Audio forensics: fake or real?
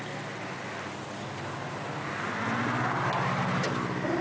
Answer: real